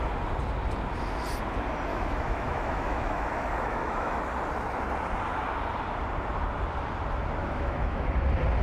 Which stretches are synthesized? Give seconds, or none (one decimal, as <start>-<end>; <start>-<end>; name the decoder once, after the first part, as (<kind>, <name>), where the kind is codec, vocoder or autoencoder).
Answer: 1.9-4.2 (autoencoder, DAC-VAE); 7.4-8.1